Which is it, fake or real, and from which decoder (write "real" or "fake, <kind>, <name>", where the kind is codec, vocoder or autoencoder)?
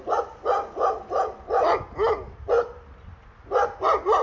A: real